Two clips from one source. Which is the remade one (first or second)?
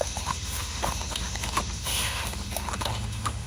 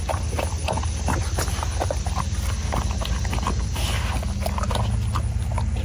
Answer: first